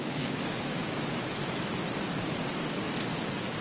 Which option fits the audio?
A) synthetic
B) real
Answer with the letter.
A